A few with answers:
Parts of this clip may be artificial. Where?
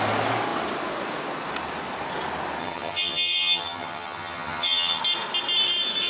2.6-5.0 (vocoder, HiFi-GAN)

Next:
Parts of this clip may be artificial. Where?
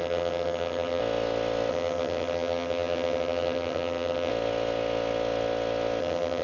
0.0-1.0 (vocoder, HiFi-GAN); 1.7-4.3; 6.0-6.4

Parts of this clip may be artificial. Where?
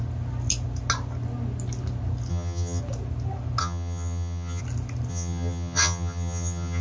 2.3-2.8 (vocoder, HiFi-GAN); 3.6-4.6; 5.1-6.8